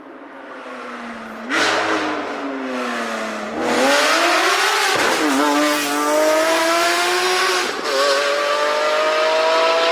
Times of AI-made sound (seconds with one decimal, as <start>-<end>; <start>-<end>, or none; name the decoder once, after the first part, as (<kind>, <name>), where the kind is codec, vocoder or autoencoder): 6.6-7.7 (autoencoder, DAC-VAE)